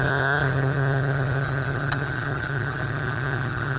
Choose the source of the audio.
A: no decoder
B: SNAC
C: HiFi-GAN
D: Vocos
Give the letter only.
C